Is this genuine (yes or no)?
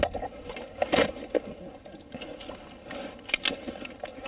yes